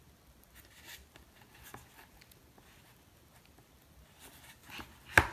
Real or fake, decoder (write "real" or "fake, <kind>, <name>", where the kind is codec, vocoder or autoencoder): real